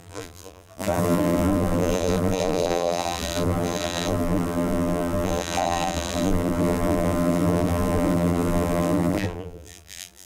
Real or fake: fake